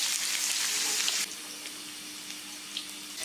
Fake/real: real